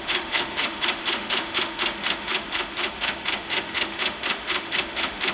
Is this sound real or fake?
fake